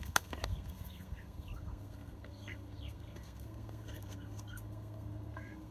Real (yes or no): no